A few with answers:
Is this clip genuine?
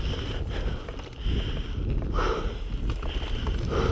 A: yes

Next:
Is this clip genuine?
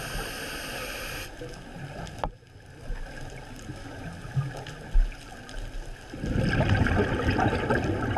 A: yes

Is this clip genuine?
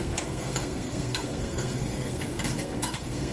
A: no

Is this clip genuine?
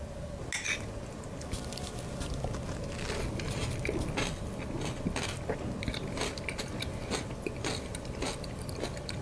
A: yes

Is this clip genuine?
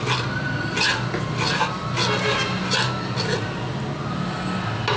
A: yes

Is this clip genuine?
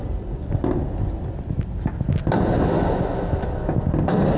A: yes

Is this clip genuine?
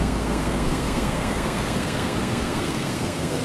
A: no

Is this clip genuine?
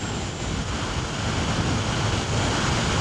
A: yes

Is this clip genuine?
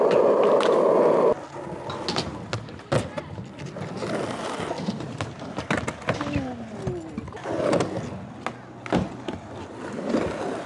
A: yes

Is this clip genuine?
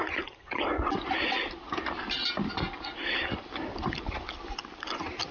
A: yes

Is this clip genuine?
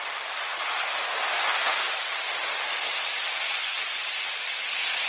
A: yes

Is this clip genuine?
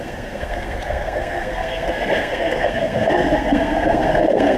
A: no